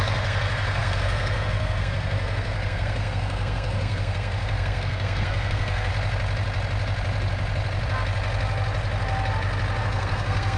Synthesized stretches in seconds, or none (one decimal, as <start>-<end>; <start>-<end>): 0.0-5.9; 9.8-10.6